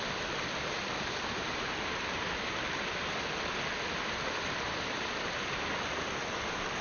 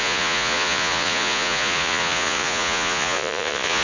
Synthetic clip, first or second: second